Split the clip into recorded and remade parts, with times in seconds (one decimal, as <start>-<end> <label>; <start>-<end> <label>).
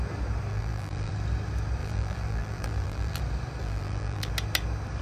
0.0-0.5 recorded; 0.5-1.1 remade; 1.1-1.8 recorded; 1.8-3.2 remade; 3.2-3.6 recorded; 3.6-4.3 remade; 4.3-5.0 recorded